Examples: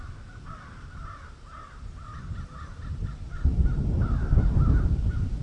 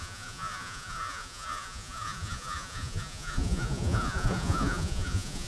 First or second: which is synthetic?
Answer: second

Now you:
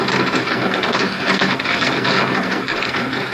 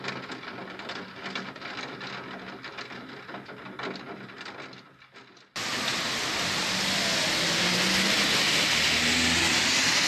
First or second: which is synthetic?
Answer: first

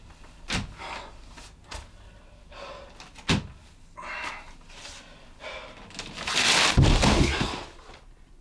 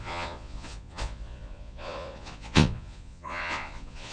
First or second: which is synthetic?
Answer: second